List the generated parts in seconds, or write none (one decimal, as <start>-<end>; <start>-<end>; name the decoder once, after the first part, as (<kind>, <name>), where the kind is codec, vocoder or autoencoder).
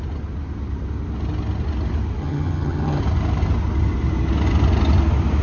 2.2-3.0 (vocoder, HiFi-GAN)